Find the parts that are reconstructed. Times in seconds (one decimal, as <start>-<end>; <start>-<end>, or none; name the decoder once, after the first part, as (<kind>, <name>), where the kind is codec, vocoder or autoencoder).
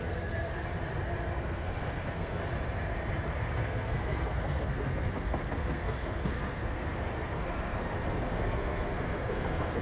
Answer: 0.0-0.5 (codec, SNAC); 1.4-2.4; 3.4-9.8